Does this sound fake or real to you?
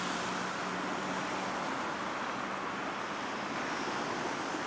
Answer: real